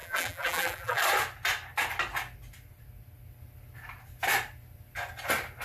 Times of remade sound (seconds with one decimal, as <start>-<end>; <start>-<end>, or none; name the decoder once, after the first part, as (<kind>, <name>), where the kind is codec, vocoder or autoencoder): 0.0-1.0 (vocoder, BigVGAN v2)